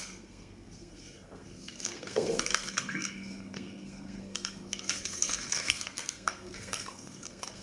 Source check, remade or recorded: remade